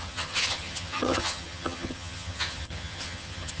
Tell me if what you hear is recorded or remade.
remade